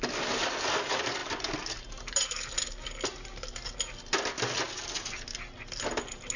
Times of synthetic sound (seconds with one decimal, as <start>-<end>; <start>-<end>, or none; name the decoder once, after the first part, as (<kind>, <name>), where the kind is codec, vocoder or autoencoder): none